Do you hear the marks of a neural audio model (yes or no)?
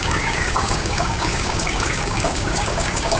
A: yes